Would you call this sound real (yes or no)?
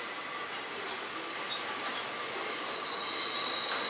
yes